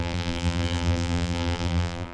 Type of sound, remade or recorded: remade